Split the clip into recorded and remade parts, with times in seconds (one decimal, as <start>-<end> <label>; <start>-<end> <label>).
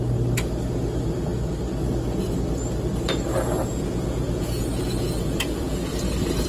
0.0-3.6 recorded; 3.6-6.1 remade; 6.1-6.5 recorded